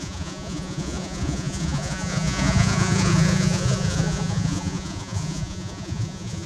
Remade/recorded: remade